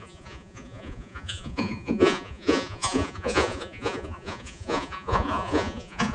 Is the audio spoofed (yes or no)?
yes